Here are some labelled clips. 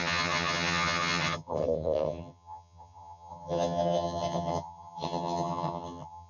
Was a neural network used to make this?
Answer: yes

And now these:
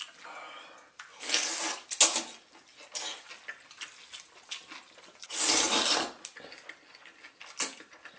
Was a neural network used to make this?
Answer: no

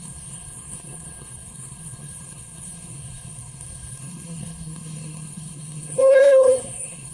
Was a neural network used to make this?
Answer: yes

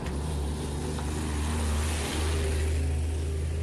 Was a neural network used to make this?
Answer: no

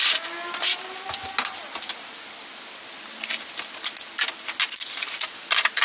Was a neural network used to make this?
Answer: no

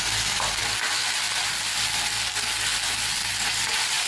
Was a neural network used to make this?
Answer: no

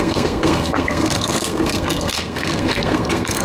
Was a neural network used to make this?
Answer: yes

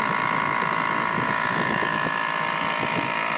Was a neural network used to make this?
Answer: yes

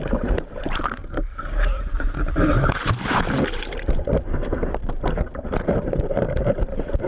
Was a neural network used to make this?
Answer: yes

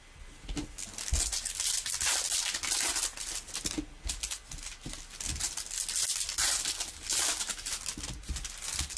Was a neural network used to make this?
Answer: no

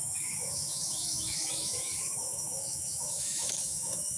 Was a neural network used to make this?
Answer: yes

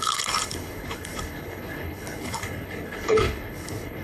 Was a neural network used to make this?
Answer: yes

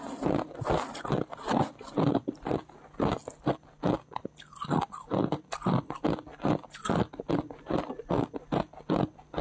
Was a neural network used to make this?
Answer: no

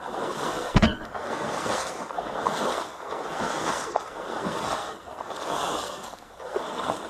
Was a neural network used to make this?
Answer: yes